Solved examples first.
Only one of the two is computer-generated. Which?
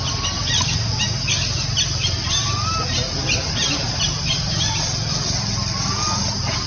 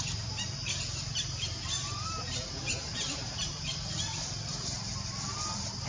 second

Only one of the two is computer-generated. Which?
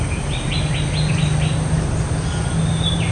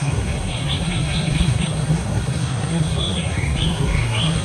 second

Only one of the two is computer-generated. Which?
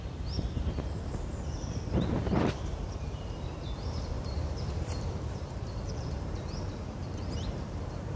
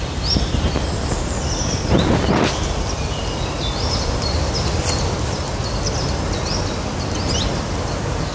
first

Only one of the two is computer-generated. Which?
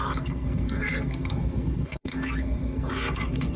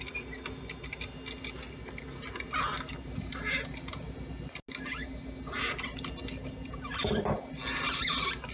first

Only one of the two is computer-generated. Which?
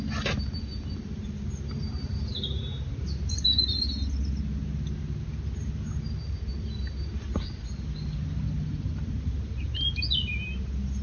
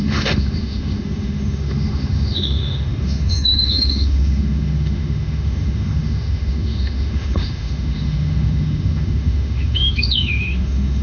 second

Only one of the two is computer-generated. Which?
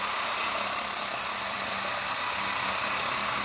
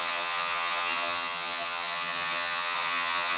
second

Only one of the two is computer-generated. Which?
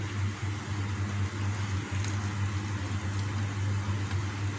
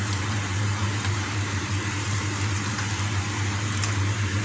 second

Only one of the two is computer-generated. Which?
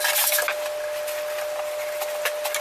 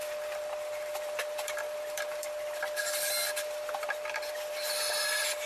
second